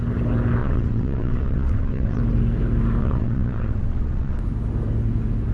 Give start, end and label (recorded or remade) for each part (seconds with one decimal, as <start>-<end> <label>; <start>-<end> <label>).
0.0-0.6 recorded; 0.6-2.2 remade; 2.2-3.0 recorded; 3.0-4.4 remade; 4.4-5.5 recorded